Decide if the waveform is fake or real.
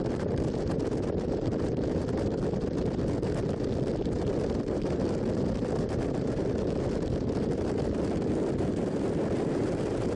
fake